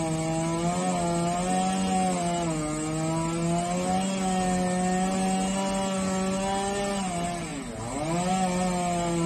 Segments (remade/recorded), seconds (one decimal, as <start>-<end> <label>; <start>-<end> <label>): 0.0-9.3 recorded